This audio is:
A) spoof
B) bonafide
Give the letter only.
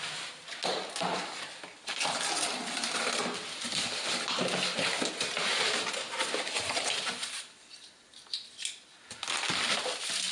B